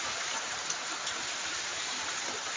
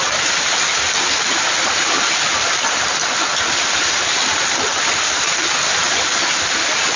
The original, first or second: second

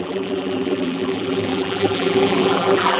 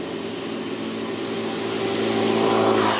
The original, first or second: second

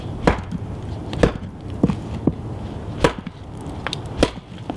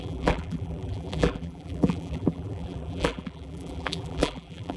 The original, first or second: first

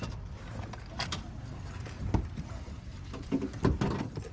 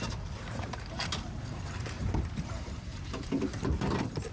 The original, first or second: first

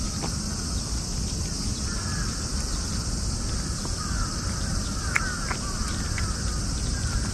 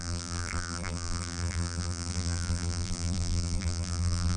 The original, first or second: first